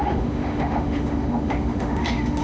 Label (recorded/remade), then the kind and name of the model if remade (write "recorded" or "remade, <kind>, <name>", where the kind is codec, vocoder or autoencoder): remade, autoencoder, DAC-VAE